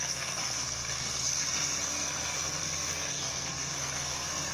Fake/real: fake